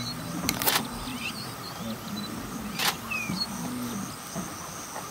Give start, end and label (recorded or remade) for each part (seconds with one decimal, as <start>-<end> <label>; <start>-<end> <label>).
0.0-1.1 recorded; 1.1-1.7 remade; 1.7-2.8 recorded; 2.8-3.5 remade; 3.5-5.1 recorded